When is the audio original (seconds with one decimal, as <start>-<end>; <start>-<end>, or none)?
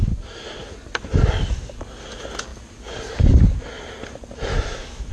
0.0-4.5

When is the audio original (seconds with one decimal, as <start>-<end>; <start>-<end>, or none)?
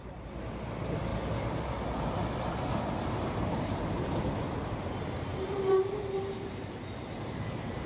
1.1-2.0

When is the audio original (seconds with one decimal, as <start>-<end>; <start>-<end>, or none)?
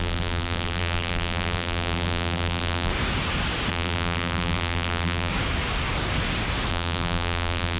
2.9-3.7; 5.3-6.7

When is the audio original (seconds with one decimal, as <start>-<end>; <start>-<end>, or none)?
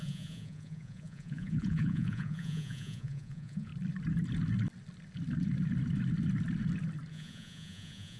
3.7-7.1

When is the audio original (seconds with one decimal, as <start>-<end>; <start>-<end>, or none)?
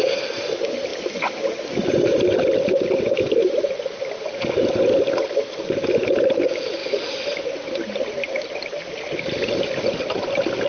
0.0-10.7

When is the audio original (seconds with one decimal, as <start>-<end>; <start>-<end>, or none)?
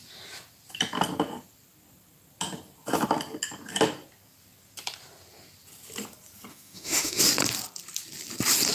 0.0-6.5; 7.2-8.7